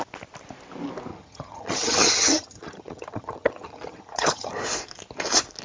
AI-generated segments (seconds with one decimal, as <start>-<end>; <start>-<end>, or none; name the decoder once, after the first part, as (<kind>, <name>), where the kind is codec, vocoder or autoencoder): 1.1-4.5 (vocoder, HiFi-GAN)